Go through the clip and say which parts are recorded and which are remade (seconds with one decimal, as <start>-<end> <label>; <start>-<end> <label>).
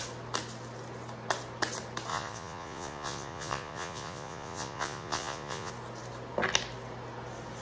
0.0-2.1 recorded; 2.1-5.7 remade; 5.7-7.6 recorded